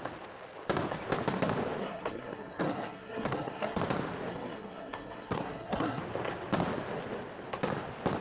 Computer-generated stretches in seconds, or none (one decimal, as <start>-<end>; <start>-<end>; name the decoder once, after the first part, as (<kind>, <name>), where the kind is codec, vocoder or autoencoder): 1.8-3.8 (codec, SNAC); 4.3-6.0